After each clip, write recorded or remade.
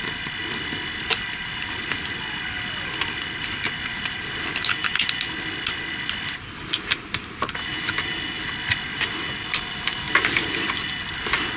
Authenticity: recorded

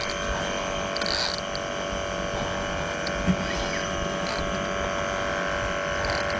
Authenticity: recorded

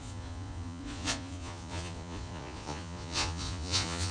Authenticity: remade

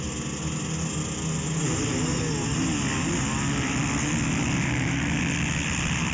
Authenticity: recorded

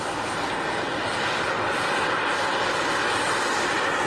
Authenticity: recorded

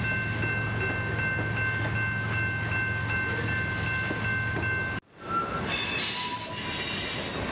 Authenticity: recorded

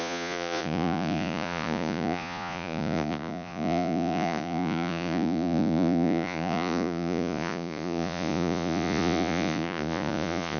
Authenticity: remade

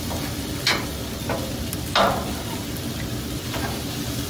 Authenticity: recorded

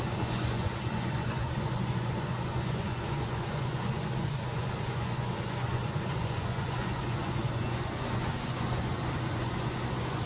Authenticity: remade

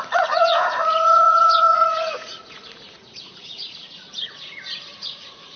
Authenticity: remade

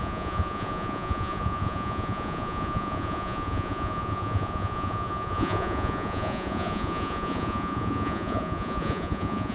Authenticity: remade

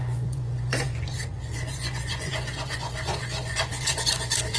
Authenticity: remade